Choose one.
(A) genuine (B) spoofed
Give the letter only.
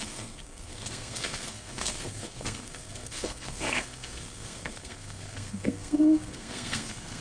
B